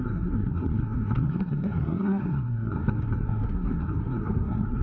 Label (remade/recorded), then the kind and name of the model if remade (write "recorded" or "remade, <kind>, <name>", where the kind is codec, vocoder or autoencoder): remade, codec, SNAC